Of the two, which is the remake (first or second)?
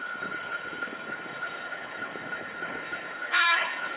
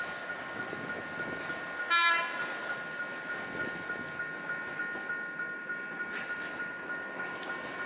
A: first